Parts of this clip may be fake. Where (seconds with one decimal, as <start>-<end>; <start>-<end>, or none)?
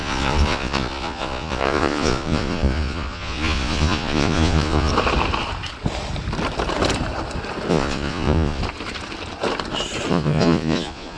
0.0-4.9; 7.7-8.6; 10.1-11.2